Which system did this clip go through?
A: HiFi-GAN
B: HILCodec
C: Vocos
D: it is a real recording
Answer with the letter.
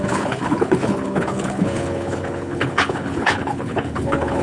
B